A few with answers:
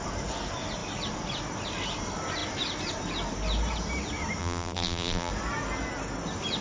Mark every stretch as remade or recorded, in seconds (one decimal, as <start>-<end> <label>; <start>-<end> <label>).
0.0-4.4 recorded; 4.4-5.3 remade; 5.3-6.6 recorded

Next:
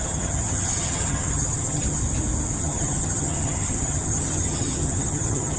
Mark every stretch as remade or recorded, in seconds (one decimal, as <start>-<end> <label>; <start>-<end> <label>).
0.0-2.0 remade; 2.0-2.6 recorded; 2.6-5.6 remade

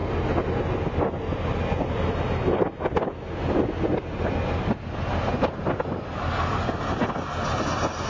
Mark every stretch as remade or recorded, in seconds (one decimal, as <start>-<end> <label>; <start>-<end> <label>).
0.0-8.1 recorded

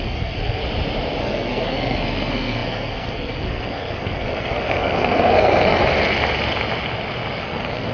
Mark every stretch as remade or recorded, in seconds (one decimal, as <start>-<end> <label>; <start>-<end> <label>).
0.0-0.6 remade; 0.6-1.2 recorded; 1.2-5.8 remade; 5.8-7.4 recorded; 7.4-7.9 remade

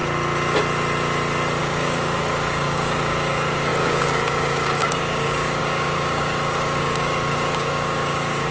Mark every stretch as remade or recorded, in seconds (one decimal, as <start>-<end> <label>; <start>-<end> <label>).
0.0-1.6 recorded; 1.6-8.5 remade

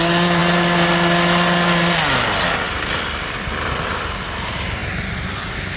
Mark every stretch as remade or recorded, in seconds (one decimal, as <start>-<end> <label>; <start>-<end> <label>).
0.0-5.8 recorded

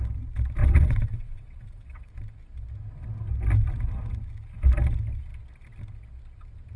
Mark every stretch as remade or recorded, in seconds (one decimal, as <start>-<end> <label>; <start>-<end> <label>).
0.0-0.6 recorded; 0.6-2.1 remade; 2.1-6.8 recorded